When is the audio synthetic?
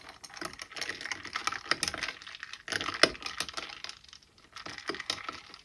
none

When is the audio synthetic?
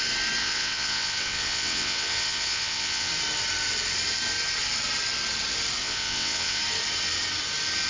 0.4-3.1 (vocoder, WaveNeXt); 5.8-6.6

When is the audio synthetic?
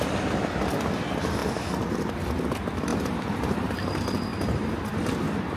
2.9-3.7 (vocoder, BigVGAN v2); 4.3-4.9